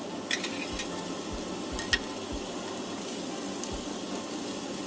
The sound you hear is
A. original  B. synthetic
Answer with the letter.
A